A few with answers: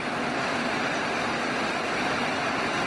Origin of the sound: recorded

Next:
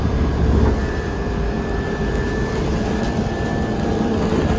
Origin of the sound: recorded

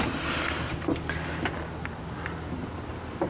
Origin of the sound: recorded